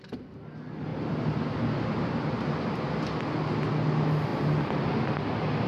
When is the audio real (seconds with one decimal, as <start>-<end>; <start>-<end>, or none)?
0.0-4.3; 4.8-5.7